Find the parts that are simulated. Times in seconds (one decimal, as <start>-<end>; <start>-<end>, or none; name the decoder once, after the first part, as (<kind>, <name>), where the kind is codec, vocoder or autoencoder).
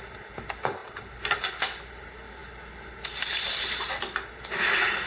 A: none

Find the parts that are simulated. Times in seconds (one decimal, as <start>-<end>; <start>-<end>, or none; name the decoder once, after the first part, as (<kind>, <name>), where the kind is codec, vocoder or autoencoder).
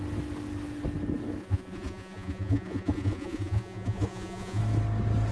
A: 1.4-4.6 (vocoder, Vocos)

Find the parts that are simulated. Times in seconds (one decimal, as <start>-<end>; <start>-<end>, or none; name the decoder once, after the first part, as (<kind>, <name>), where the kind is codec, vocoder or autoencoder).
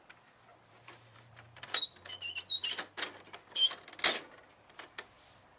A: 0.5-1.8 (vocoder, BigVGAN v2)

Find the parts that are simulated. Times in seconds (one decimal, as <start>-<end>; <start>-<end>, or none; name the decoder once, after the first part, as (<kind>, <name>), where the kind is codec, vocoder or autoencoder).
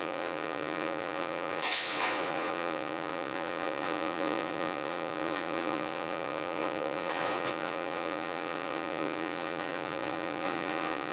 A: 0.0-11.1 (vocoder, Vocos)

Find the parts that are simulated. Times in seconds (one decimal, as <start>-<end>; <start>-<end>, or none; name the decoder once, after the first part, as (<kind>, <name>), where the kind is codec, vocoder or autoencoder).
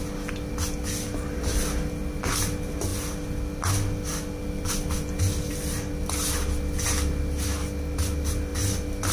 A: none